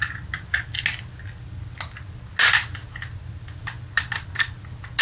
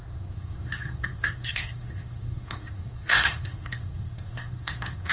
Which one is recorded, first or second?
first